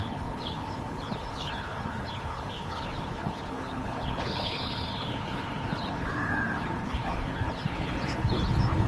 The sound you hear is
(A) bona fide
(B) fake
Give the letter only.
B